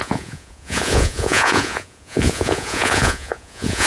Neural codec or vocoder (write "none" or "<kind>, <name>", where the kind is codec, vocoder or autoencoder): vocoder, Vocos